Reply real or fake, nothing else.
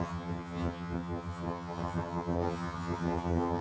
fake